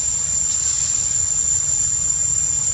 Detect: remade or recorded recorded